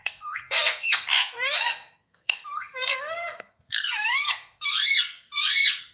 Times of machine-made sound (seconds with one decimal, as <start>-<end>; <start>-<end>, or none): 0.0-5.9